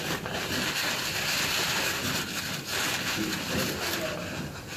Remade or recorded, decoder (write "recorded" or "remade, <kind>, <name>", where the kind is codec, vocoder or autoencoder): recorded